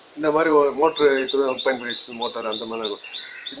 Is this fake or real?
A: fake